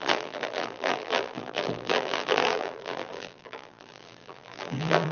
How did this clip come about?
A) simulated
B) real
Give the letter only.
A